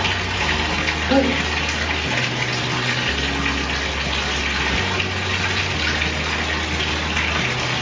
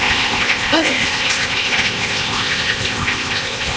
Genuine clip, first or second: first